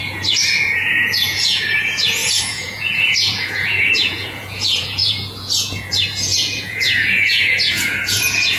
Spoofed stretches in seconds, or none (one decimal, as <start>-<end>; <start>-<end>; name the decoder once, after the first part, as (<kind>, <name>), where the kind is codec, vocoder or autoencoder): 0.0-8.6 (vocoder, Vocos)